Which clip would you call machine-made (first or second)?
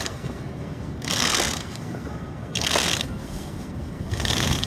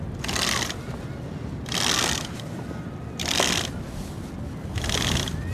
first